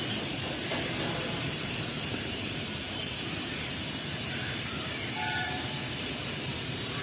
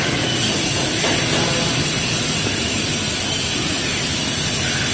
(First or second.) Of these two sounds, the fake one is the first